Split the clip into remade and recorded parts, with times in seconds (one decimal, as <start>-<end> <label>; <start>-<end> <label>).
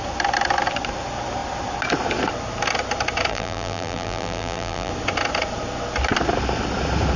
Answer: 0.0-3.3 recorded; 3.3-4.9 remade; 4.9-7.2 recorded